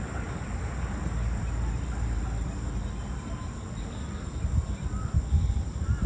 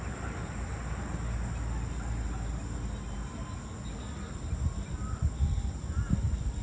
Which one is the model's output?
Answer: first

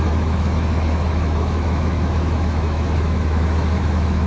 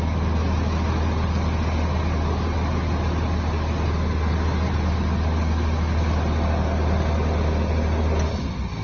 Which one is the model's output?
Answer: first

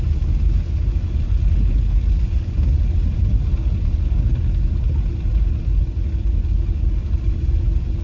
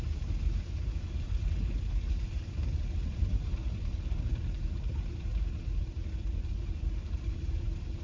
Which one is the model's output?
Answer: second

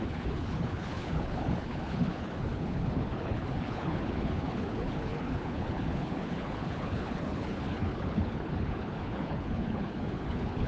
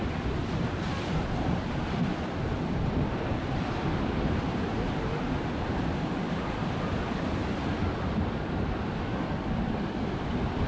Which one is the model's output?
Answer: first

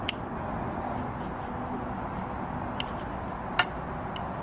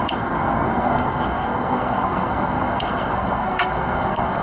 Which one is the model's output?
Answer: second